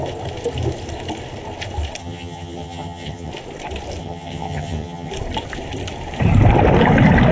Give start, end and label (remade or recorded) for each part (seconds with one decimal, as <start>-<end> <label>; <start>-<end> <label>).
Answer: 0.0-2.0 recorded; 2.0-3.3 remade; 3.3-4.0 recorded; 4.0-5.1 remade; 5.1-7.3 recorded